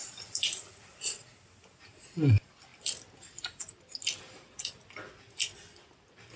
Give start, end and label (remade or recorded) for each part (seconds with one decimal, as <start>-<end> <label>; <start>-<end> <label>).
0.0-6.4 recorded